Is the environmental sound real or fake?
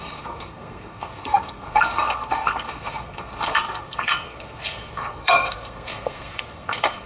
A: fake